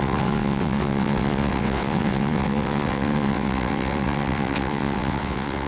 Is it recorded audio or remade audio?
remade